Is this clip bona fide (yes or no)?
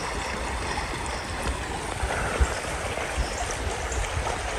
yes